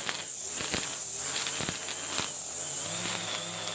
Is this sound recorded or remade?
recorded